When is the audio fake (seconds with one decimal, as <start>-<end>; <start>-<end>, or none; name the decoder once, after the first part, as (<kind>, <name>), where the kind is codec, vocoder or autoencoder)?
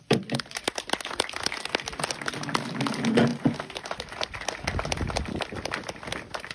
none